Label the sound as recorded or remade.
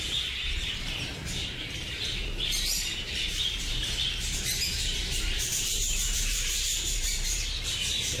remade